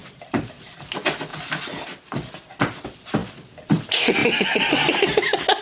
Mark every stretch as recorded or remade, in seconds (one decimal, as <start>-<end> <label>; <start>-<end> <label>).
0.0-0.8 remade; 0.8-1.3 recorded; 1.3-2.3 remade; 2.3-3.2 recorded; 3.2-3.8 remade; 3.8-5.6 recorded